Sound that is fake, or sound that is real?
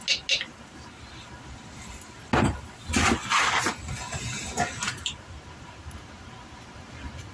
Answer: real